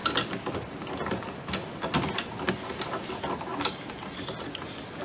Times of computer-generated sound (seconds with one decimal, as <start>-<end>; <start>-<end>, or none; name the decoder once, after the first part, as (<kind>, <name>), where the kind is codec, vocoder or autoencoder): none